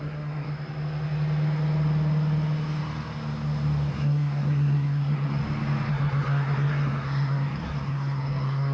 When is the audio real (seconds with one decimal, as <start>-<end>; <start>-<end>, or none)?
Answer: 0.5-3.9; 5.4-5.9